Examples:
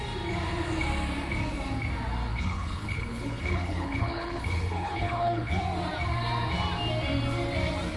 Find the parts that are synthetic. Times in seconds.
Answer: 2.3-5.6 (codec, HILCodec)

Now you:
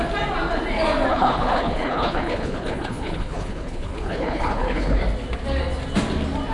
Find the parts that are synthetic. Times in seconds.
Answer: 1.1-5.0 (codec, HILCodec)

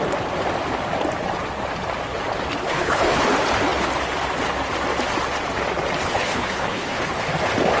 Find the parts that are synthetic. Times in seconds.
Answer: 2.6-3.2 (codec, HILCodec); 6.0-7.1